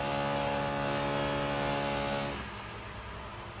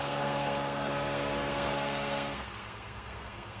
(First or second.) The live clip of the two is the first